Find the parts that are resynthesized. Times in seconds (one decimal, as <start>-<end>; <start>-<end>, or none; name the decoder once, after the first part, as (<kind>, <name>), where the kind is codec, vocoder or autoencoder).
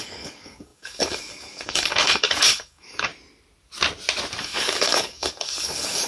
0.0-3.1 (codec, DAC); 4.4-6.1